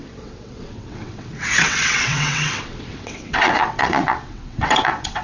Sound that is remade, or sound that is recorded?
remade